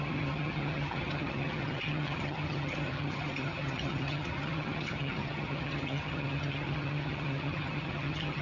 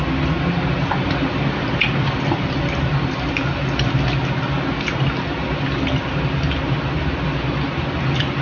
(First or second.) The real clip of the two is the second